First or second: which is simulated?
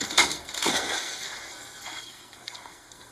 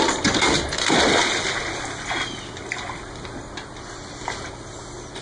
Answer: first